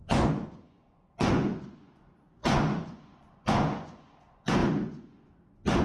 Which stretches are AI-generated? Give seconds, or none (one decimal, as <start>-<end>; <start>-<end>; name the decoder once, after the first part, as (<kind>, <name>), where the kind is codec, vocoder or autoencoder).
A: 0.0-5.8 (vocoder, Vocos)